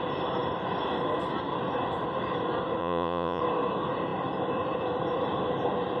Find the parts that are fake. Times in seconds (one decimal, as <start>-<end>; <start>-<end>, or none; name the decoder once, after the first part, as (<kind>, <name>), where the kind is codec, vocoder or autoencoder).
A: 2.8-3.4 (vocoder, Vocos)